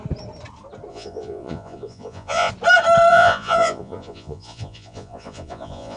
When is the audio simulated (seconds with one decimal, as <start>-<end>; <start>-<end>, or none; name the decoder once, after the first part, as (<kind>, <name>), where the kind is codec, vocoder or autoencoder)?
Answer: 0.9-2.5 (vocoder, Vocos); 3.1-6.0